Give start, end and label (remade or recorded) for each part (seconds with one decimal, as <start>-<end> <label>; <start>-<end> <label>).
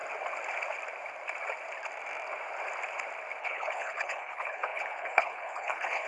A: 0.0-3.4 recorded; 3.4-6.1 remade